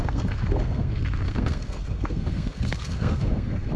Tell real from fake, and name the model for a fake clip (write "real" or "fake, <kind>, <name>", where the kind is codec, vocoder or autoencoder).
fake, codec, SNAC